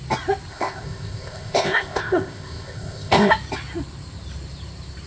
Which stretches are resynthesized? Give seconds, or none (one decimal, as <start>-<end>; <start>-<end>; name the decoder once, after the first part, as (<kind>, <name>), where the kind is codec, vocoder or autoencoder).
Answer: 0.5-3.3 (codec, ZipCodec)